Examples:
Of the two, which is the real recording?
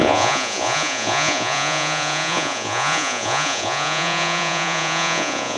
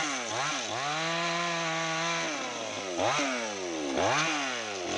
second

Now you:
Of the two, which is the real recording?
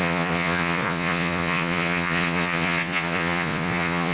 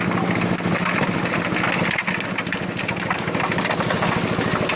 second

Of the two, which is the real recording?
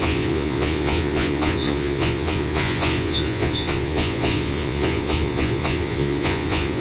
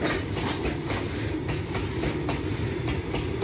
second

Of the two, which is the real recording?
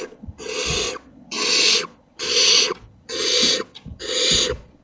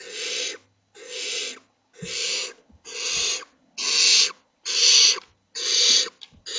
second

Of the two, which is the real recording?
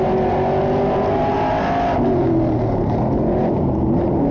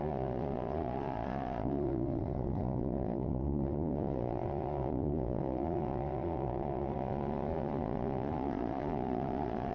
first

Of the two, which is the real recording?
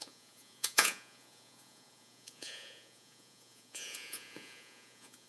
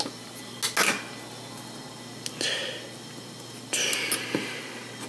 second